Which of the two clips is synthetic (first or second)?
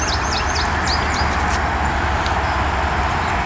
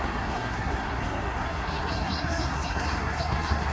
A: second